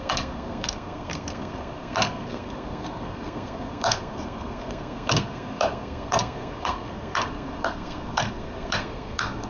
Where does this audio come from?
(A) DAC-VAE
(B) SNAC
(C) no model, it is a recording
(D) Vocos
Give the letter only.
B